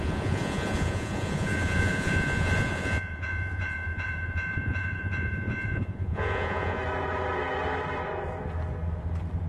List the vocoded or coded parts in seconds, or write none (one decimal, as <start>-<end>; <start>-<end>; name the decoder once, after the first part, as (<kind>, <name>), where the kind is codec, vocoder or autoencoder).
0.0-6.8 (vocoder, Vocos)